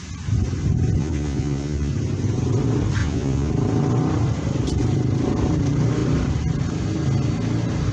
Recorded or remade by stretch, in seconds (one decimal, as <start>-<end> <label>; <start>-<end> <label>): 0.0-1.0 recorded; 1.0-1.9 remade; 1.9-3.0 recorded; 3.0-3.5 remade; 3.5-7.9 recorded